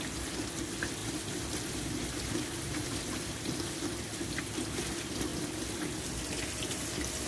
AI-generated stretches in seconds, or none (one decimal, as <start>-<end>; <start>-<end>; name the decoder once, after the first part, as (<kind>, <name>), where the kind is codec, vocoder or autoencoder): none